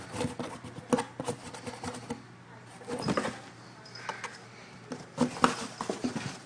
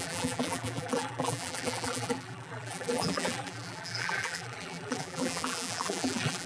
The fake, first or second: second